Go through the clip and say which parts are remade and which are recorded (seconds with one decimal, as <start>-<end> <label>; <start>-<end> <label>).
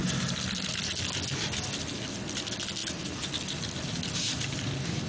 0.0-5.1 recorded